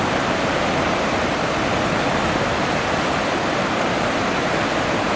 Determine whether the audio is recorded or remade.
recorded